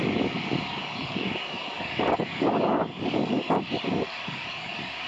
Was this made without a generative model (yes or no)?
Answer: no